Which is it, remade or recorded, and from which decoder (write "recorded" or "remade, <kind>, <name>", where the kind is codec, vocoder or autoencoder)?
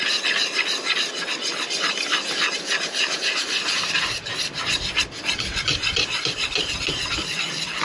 recorded